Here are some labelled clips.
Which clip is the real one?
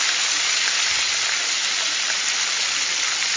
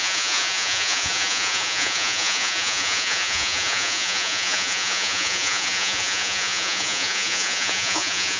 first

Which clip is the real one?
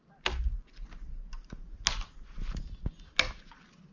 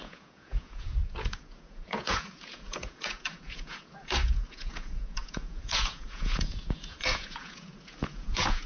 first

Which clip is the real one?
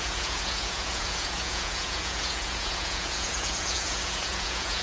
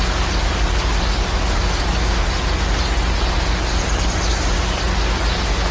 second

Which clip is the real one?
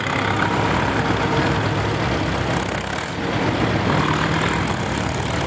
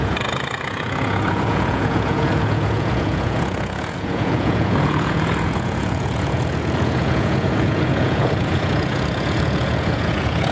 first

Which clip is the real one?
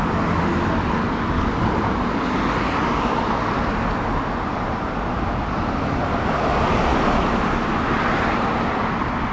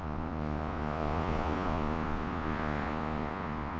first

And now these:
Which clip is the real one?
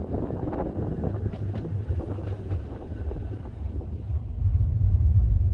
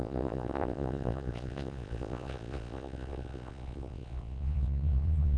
first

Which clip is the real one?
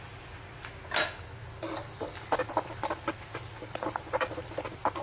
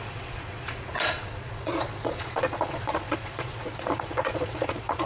first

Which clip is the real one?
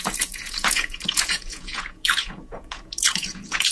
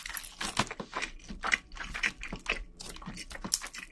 second